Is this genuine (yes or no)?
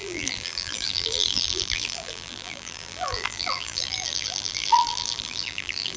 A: no